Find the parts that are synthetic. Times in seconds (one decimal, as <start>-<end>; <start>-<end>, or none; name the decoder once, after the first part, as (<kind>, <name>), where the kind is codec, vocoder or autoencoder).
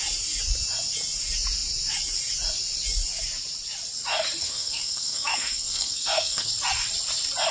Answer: 4.4-6.5 (codec, SNAC)